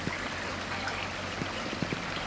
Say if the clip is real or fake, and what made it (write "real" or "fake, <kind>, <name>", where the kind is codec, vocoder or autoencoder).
real